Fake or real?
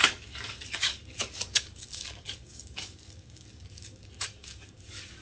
fake